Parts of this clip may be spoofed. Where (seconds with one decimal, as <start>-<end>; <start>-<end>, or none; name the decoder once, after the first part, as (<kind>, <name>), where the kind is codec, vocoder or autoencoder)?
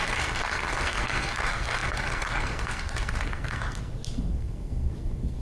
0.0-5.4 (codec, SNAC)